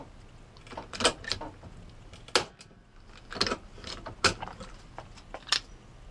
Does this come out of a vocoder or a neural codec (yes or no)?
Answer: no